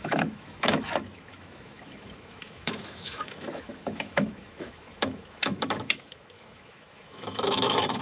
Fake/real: fake